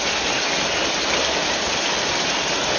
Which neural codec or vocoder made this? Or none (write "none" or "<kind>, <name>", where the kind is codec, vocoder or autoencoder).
none